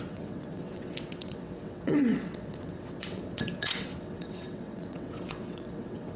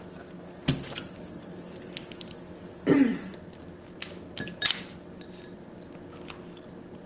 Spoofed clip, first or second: first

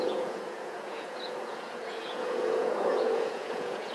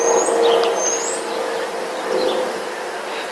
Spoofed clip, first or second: first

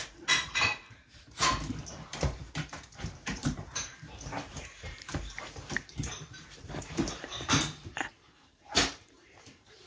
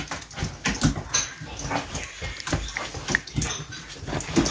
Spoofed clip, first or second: first